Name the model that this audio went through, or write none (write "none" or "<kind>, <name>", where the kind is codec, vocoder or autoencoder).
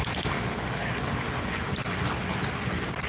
none